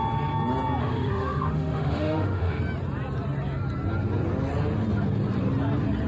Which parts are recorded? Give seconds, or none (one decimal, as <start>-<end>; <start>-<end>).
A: 0.0-0.8; 2.6-6.1

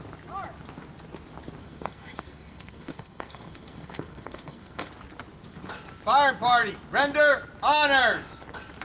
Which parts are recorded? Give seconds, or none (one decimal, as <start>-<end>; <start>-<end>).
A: 0.0-1.6; 4.9-8.8

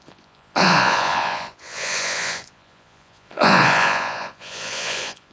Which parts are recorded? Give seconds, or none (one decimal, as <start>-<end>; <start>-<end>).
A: none

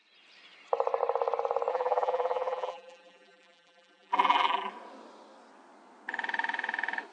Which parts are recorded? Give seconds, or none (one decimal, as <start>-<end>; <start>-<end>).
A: 0.0-1.7; 4.7-7.1

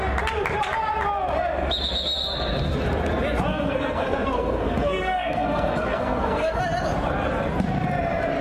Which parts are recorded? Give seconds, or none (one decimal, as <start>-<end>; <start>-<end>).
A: 0.0-3.5; 6.6-8.4